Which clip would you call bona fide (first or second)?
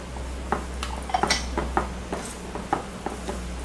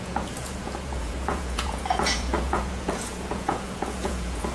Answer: first